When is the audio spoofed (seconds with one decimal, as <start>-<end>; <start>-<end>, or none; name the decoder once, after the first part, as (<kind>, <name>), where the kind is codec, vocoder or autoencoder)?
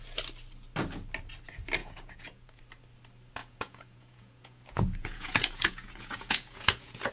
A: 1.8-2.6 (vocoder, Vocos); 3.4-7.1